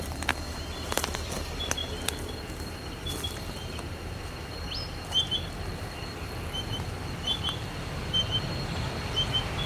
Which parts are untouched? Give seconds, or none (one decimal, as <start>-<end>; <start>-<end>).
0.0-9.7